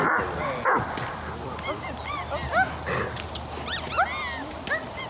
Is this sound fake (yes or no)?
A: no